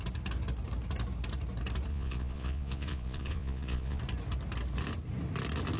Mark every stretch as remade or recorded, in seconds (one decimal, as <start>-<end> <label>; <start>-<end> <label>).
0.0-1.9 recorded; 1.9-4.0 remade; 4.0-5.8 recorded